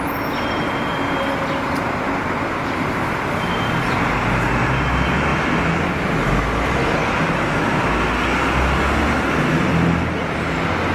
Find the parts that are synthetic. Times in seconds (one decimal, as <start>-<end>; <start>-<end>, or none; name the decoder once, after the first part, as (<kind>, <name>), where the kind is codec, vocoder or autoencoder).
none

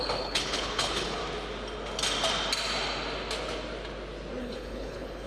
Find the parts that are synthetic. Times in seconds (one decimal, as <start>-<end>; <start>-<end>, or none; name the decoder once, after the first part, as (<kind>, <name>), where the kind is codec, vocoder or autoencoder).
0.0-1.2 (codec, HILCodec); 4.4-5.3